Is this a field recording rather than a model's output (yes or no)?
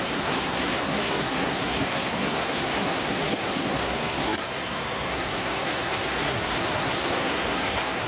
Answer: no